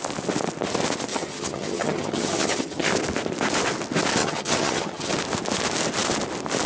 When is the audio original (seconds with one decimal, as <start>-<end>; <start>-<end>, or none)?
0.0-1.1; 2.9-4.2; 5.1-6.7